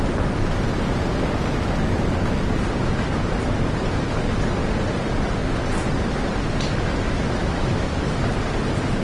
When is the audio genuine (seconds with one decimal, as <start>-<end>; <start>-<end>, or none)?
0.0-7.4; 8.1-9.0